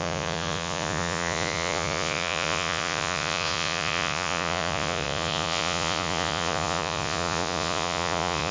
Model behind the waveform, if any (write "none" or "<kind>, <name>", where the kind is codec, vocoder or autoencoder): vocoder, Vocos